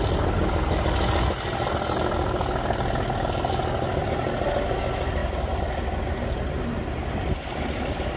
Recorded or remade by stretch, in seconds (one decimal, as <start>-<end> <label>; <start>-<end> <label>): 0.0-8.2 recorded